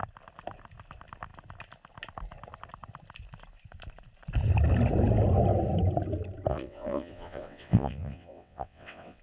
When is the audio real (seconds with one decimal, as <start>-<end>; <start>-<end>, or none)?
0.0-6.5